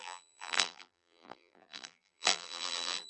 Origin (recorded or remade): remade